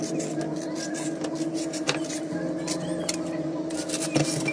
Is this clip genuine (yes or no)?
yes